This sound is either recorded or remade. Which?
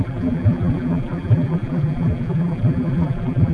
remade